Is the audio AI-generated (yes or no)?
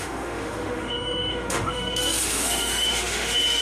yes